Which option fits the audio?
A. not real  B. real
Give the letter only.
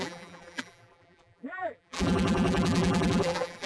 A